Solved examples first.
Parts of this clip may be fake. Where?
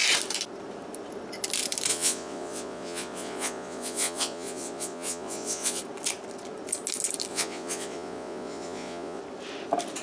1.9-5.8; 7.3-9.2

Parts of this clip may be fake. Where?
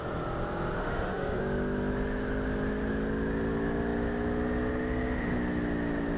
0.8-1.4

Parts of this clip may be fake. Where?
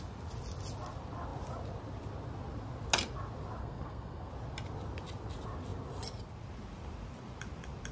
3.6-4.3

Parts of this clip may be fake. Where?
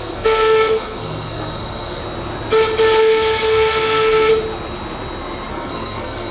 0.0-2.0; 3.0-4.3; 5.5-6.3